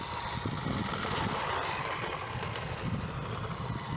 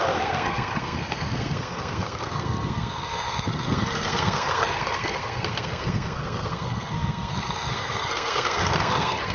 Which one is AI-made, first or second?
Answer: second